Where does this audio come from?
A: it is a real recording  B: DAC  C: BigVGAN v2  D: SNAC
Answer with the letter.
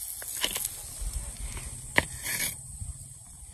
A